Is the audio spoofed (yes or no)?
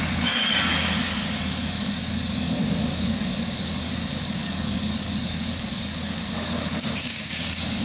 yes